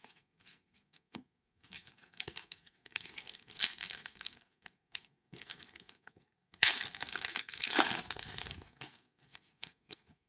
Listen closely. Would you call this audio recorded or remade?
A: remade